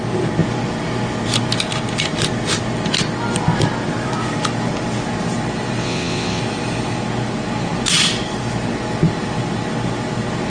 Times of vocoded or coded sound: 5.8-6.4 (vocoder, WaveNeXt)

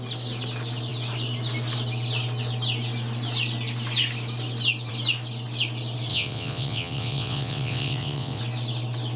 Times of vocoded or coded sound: 6.1-8.4 (vocoder, WaveNeXt)

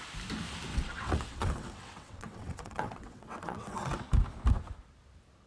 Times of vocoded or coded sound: 0.7-4.0 (vocoder, WaveNeXt)

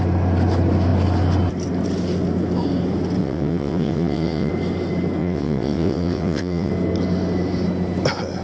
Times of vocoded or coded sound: 3.2-4.5 (vocoder, WaveNeXt); 5.2-6.7